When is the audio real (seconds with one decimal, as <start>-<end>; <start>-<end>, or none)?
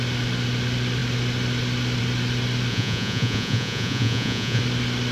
0.0-2.7; 4.6-5.1